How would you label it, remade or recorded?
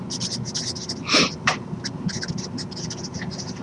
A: recorded